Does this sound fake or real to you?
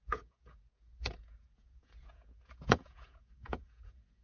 fake